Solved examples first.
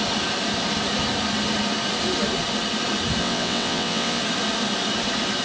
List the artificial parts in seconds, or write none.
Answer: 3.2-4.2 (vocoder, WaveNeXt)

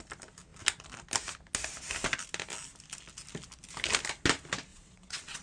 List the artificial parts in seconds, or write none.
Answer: 4.7-5.4 (vocoder, WaveNeXt)

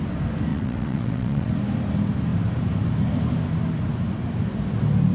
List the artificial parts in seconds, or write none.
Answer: 0.5-1.5 (vocoder, WaveNeXt)